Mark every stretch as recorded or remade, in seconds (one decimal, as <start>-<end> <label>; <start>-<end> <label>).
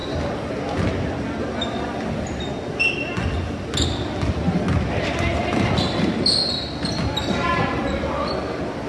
0.0-2.1 recorded; 2.1-2.5 remade; 2.5-6.0 recorded; 6.0-7.8 remade; 7.8-8.9 recorded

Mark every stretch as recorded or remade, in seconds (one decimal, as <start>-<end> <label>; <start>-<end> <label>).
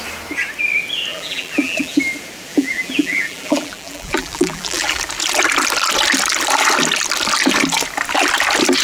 0.0-1.1 recorded; 1.1-2.0 remade; 2.0-2.5 recorded; 2.5-5.0 remade; 5.0-8.8 recorded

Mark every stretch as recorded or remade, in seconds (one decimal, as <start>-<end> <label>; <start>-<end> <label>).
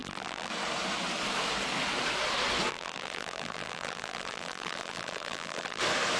0.0-0.5 remade; 0.5-2.7 recorded; 2.7-5.8 remade; 5.8-6.2 recorded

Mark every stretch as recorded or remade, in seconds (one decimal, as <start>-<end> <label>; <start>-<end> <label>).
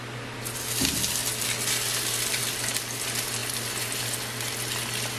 0.0-1.2 remade; 1.2-2.4 recorded; 2.4-3.4 remade; 3.4-4.0 recorded; 4.0-5.2 remade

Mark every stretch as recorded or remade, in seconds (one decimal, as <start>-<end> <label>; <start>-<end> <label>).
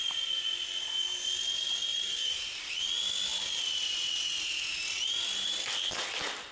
0.0-1.9 recorded; 1.9-2.6 remade; 2.6-6.5 recorded